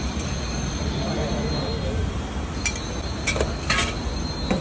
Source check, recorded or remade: recorded